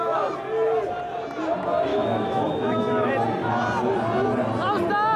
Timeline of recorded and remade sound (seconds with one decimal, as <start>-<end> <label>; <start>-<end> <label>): 0.0-1.9 recorded; 1.9-3.1 remade; 3.1-5.2 recorded